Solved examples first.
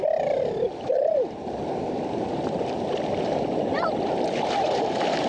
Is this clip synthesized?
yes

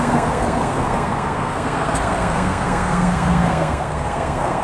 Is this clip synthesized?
yes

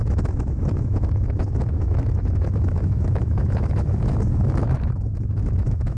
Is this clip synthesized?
yes